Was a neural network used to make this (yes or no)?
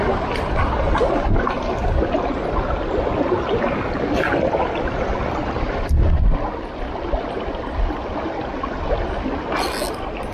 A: no